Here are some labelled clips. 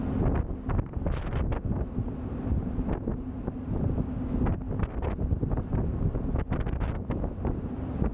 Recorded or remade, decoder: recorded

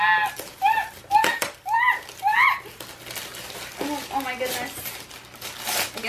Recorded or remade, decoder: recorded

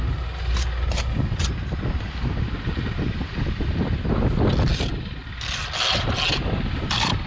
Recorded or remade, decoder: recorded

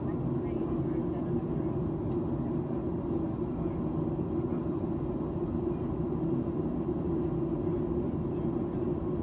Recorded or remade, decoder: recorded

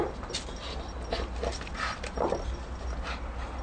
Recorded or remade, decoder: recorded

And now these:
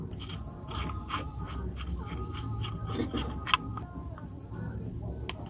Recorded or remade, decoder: recorded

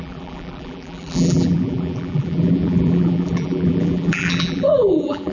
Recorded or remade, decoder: remade, vocoder, BigVGAN v2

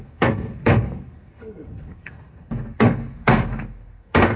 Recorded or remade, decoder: remade, codec, SNAC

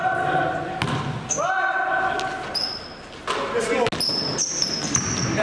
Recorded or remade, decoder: recorded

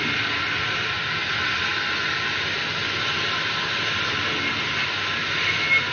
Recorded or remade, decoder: recorded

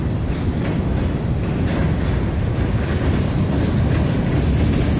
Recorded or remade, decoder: recorded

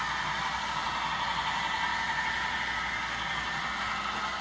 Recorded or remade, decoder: recorded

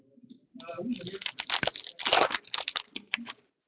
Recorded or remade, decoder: recorded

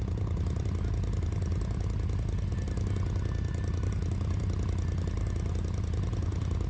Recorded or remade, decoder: recorded